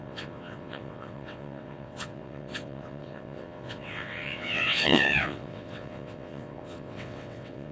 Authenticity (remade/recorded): remade